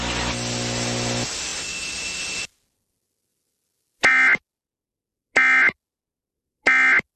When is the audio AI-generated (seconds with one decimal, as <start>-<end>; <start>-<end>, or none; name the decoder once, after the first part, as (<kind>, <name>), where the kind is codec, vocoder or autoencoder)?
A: none

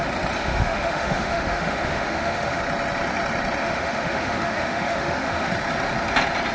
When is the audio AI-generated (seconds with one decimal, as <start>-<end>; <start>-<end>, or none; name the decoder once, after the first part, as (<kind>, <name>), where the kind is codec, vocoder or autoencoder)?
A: 0.4-2.6 (autoencoder, DAC-VAE); 3.6-5.5

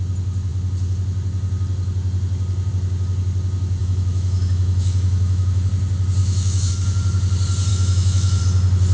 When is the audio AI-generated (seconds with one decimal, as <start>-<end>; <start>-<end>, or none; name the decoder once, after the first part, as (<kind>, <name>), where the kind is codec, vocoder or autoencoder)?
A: 3.8-5.7 (autoencoder, DAC-VAE); 6.2-6.7; 7.7-8.4

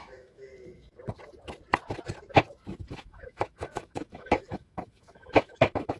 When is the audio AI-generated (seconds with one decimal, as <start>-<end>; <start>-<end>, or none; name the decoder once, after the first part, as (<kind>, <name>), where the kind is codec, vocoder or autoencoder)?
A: 0.0-0.5 (autoencoder, DAC-VAE); 2.9-6.0

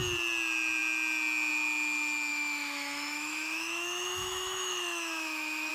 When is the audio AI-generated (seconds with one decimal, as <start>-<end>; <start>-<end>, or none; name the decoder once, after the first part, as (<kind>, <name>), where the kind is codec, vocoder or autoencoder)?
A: 2.3-5.7 (autoencoder, DAC-VAE)

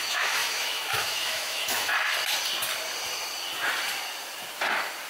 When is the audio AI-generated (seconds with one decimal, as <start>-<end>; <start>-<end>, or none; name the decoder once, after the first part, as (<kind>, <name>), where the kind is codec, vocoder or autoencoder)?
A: 0.0-1.9 (autoencoder, DAC-VAE)

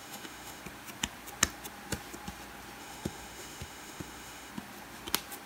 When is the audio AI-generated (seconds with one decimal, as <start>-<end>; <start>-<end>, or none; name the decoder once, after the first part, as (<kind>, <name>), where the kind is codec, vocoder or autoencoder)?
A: 0.0-0.6 (autoencoder, DAC-VAE); 2.8-4.5

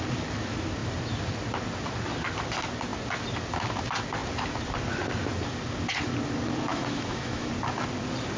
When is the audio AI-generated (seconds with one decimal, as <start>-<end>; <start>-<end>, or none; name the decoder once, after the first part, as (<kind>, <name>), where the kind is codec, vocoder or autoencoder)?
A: 6.7-7.5 (autoencoder, DAC-VAE)